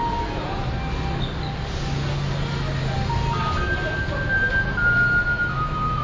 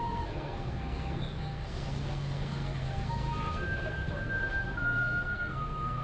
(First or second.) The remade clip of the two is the second